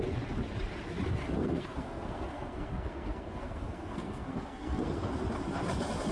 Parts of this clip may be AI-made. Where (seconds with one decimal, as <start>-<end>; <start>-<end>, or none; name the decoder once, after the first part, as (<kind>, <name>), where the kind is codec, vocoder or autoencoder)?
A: 1.4-5.1 (codec, SNAC)